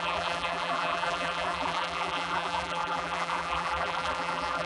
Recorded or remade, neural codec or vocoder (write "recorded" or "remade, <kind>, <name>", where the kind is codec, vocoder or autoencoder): remade, vocoder, BigVGAN v2